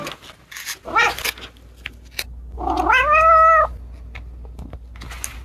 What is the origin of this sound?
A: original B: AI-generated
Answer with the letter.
A